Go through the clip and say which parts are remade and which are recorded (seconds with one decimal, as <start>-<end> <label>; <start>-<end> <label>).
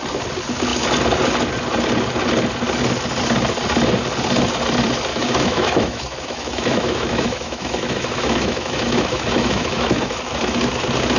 0.0-5.1 recorded; 5.1-10.2 remade; 10.2-11.2 recorded